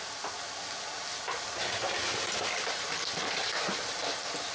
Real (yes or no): yes